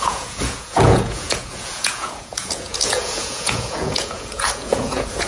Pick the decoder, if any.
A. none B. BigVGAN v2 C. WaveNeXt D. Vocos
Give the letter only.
D